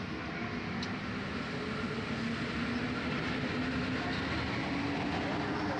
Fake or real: real